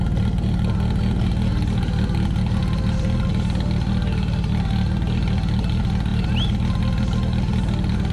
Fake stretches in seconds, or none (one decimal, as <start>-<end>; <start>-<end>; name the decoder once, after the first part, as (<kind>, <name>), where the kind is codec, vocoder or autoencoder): none

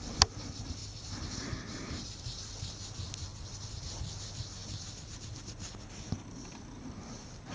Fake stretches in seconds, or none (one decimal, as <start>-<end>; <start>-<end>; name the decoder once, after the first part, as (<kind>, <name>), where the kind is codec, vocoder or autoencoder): 0.8-1.8 (vocoder, BigVGAN v2); 3.3-3.9

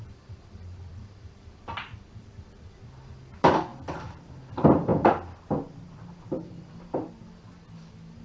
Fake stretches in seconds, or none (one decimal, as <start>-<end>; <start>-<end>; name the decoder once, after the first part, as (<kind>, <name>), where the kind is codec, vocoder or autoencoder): 0.0-4.9 (vocoder, BigVGAN v2); 7.1-8.2

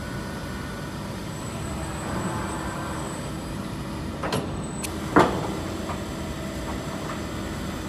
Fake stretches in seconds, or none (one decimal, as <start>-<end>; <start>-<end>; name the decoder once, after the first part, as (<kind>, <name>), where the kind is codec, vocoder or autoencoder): 0.0-0.4 (vocoder, BigVGAN v2); 1.1-7.9

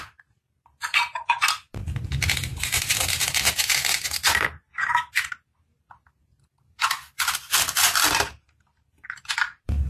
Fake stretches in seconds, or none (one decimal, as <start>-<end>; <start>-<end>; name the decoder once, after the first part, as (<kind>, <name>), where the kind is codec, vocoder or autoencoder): 2.5-3.2 (vocoder, BigVGAN v2)